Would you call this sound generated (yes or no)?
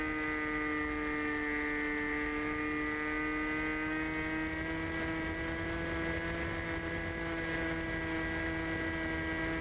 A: no